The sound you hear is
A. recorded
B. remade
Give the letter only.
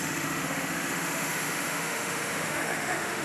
B